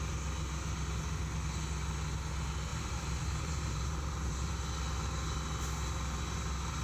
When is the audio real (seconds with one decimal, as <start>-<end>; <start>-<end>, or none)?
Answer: 0.0-2.7; 4.5-6.8